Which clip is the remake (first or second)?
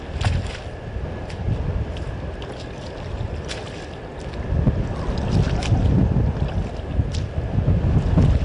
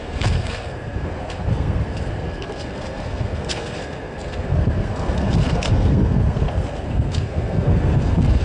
second